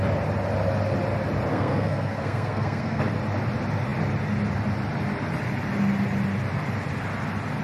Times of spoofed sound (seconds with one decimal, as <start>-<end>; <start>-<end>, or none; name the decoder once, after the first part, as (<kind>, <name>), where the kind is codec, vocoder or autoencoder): 1.5-3.0 (codec, SNAC)